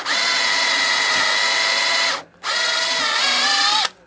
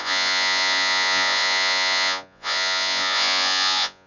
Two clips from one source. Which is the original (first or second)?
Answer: first